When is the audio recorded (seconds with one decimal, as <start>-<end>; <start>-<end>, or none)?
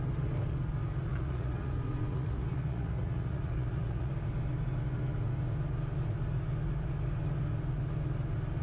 0.0-1.1; 1.7-2.1; 4.1-8.6